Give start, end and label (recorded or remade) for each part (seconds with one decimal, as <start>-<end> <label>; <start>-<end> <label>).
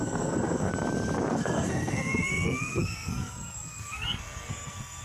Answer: 0.0-0.7 remade; 0.7-1.3 recorded; 1.3-5.0 remade